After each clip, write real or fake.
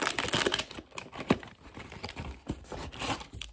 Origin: fake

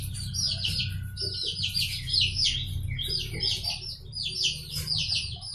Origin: real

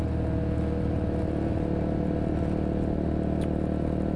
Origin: real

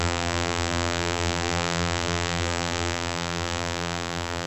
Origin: fake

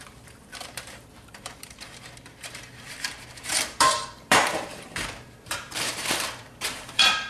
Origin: fake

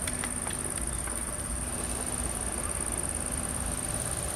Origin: real